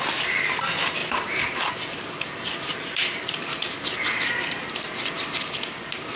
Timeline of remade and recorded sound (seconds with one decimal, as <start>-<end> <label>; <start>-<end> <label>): 0.0-1.0 recorded; 1.0-4.7 remade; 4.7-6.2 recorded